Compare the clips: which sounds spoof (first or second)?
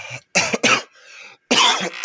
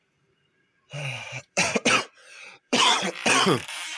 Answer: second